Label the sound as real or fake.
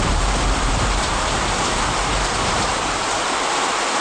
fake